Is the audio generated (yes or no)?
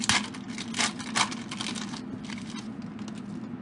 no